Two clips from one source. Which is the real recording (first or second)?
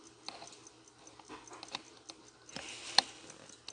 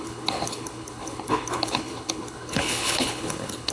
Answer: first